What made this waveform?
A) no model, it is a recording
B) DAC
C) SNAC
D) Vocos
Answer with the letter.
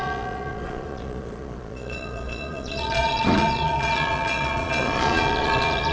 D